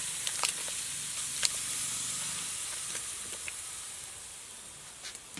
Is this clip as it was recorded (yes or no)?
no